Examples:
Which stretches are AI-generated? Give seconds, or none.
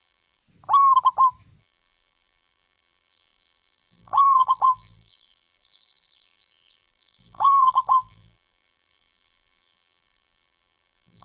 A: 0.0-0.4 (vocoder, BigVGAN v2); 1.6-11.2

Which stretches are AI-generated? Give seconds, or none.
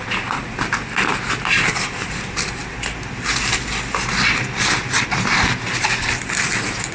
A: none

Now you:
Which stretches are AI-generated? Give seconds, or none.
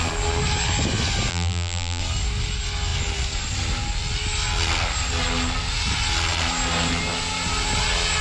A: 1.3-2.0 (vocoder, BigVGAN v2)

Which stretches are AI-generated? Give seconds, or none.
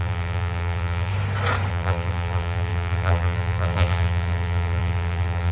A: 0.0-1.1 (vocoder, BigVGAN v2); 1.7-5.5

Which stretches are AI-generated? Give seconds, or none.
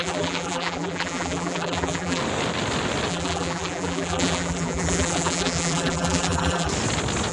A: 0.0-2.2 (vocoder, BigVGAN v2); 3.1-6.7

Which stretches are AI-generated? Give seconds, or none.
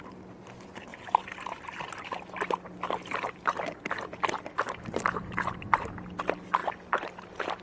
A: 6.6-7.6 (vocoder, BigVGAN v2)